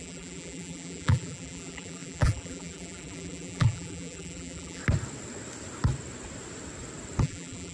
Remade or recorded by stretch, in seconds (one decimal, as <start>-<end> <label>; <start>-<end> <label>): 0.0-4.8 remade; 4.8-7.2 recorded; 7.2-7.7 remade